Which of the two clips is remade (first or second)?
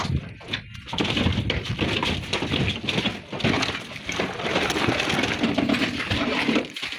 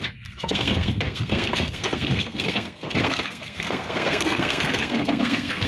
second